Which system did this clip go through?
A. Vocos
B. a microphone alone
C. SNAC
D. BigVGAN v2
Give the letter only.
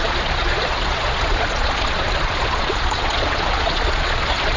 A